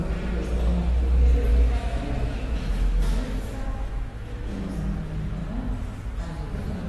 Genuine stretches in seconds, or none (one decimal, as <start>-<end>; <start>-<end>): 0.0-1.5; 4.7-6.9